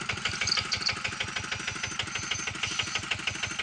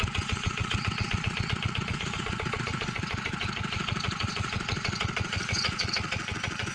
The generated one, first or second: second